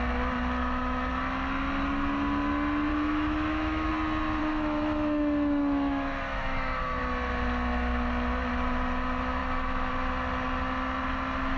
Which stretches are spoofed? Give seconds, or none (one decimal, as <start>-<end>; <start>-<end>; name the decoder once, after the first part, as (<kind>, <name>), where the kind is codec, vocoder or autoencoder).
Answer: 0.6-1.1 (autoencoder, DAC-VAE); 2.9-3.9; 4.4-7.0; 9.4-9.9